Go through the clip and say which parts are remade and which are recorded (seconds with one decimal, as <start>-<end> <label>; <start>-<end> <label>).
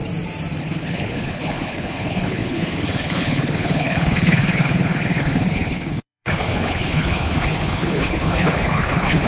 0.0-0.6 recorded; 0.6-9.3 remade